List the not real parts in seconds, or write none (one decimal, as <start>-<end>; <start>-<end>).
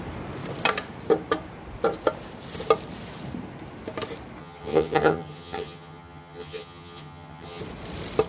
4.4-7.6